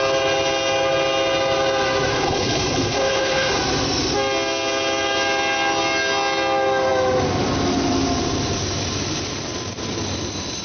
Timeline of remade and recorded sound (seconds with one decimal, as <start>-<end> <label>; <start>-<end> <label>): 0.0-2.1 recorded; 2.1-3.6 remade; 3.6-10.6 recorded